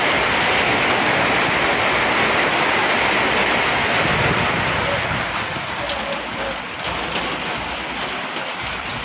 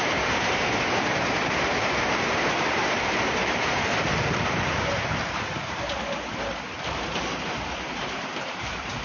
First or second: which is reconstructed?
second